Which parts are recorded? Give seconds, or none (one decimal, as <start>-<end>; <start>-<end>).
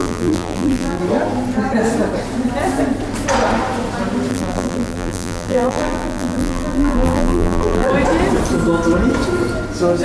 1.0-4.3; 7.9-10.0